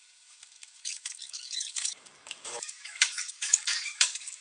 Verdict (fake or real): fake